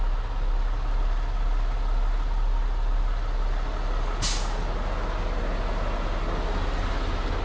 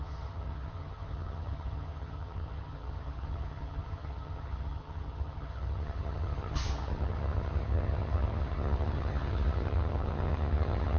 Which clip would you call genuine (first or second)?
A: first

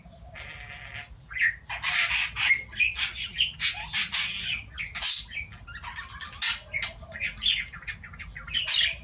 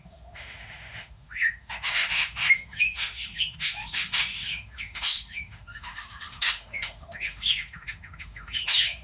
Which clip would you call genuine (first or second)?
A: first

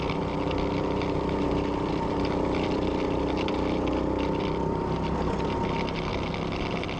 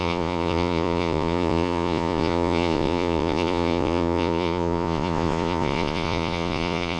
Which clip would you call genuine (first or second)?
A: first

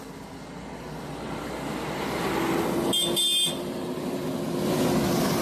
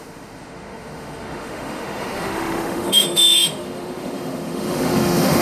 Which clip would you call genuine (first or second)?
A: first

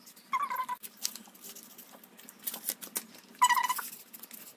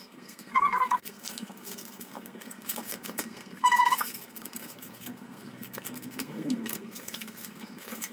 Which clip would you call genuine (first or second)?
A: first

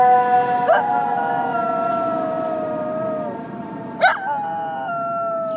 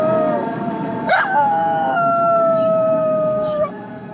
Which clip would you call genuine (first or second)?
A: first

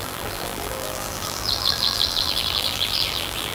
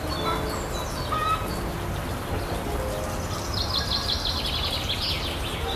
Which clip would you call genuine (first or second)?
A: second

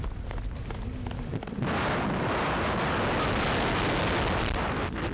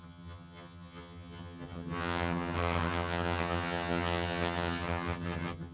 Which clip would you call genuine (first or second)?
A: first